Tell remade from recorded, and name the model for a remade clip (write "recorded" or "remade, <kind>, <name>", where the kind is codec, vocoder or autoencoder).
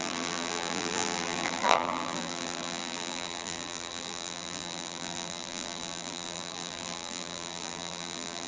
remade, vocoder, BigVGAN v2